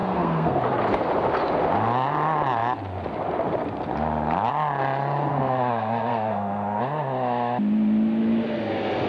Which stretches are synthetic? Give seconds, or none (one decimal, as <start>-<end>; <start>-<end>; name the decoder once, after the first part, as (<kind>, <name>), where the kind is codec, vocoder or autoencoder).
0.0-0.6 (codec, SNAC); 5.3-6.8